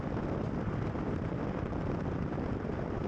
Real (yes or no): no